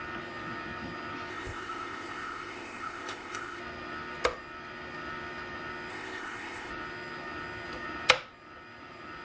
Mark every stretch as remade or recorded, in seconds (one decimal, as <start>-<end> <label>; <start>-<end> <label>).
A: 0.0-1.3 recorded; 1.3-3.6 remade; 3.6-5.9 recorded; 5.9-6.7 remade; 6.7-9.2 recorded